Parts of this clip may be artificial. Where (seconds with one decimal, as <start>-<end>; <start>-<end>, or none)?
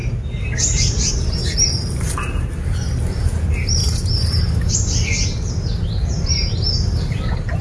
0.0-1.1; 3.8-7.6